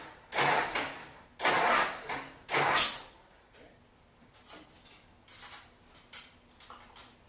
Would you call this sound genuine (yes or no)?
yes